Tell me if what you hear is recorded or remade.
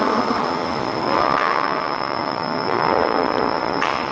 remade